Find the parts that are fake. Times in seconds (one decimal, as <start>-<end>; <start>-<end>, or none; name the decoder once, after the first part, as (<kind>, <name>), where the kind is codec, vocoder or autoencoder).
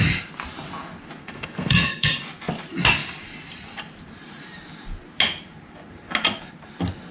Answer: 1.2-2.1 (codec, SNAC)